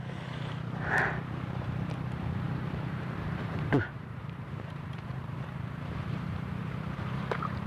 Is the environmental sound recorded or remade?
remade